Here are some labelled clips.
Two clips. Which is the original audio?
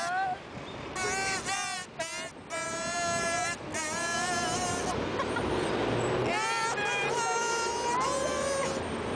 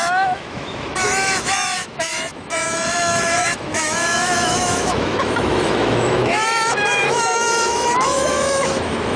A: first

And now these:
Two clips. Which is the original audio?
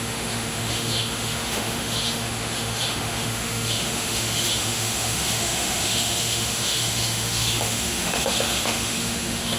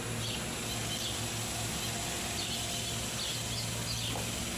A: second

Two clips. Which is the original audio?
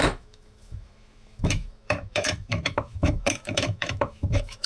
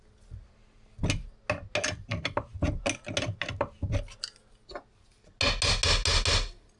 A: second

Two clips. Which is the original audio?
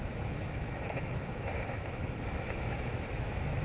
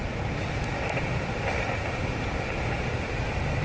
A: second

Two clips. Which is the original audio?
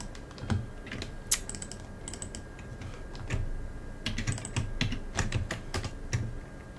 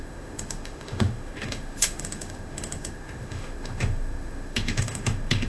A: first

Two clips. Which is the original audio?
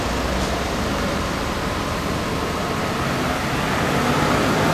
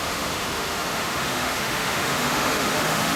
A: first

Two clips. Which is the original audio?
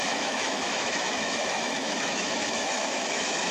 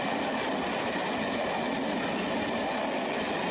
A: second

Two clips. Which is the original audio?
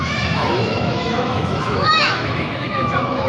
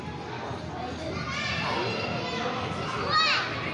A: second